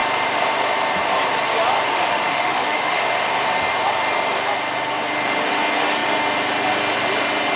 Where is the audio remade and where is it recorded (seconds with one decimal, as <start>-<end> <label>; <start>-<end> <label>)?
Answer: 0.0-1.9 recorded; 1.9-3.0 remade; 3.0-7.6 recorded

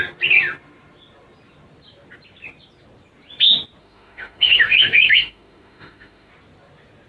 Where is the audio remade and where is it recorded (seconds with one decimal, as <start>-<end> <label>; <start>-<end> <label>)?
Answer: 0.0-3.8 recorded; 3.8-6.3 remade; 6.3-7.1 recorded

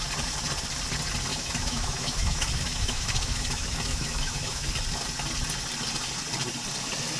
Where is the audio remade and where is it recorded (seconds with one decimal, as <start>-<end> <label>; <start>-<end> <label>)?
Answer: 0.0-1.3 recorded; 1.3-4.7 remade; 4.7-7.2 recorded

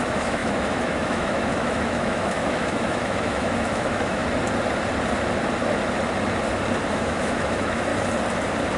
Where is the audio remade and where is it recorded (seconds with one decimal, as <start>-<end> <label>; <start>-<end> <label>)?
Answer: 0.0-4.2 remade; 4.2-6.9 recorded; 6.9-7.9 remade; 7.9-8.8 recorded

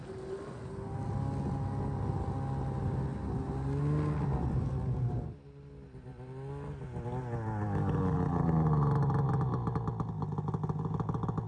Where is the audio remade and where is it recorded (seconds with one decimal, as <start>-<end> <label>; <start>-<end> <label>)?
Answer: 0.0-11.5 recorded